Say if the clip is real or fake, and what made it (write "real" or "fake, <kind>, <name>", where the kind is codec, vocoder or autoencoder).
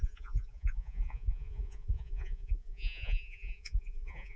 fake, vocoder, Vocos